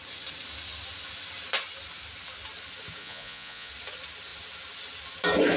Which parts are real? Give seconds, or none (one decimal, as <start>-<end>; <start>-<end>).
0.0-3.0; 3.7-5.6